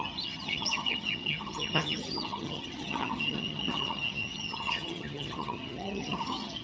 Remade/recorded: remade